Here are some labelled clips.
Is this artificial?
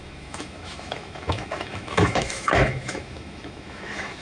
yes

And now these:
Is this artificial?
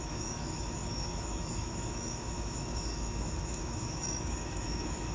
yes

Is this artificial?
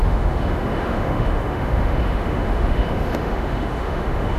yes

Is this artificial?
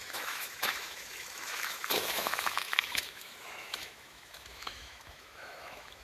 yes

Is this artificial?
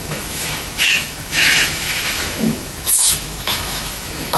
yes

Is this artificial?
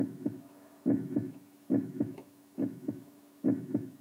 yes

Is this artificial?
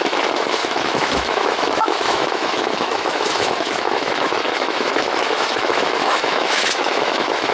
yes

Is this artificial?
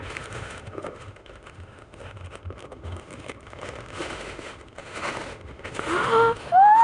yes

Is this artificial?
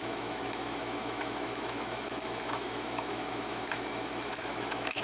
yes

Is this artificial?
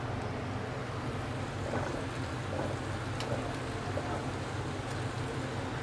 no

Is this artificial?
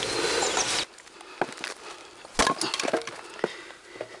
no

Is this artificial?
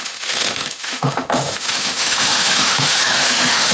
yes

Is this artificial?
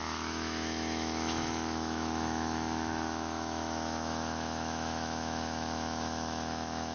yes